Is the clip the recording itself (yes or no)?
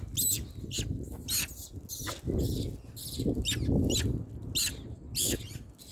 yes